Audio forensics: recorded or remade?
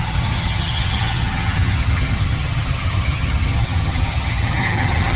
remade